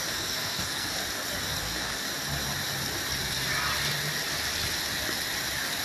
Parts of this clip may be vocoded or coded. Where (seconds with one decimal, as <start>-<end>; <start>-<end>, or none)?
0.0-1.0; 1.6-2.1